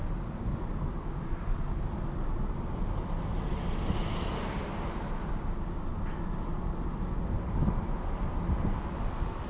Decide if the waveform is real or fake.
real